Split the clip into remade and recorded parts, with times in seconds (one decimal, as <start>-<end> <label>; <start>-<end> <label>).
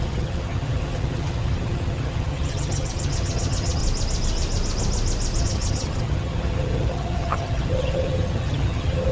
0.0-3.8 remade; 3.8-5.4 recorded; 5.4-9.1 remade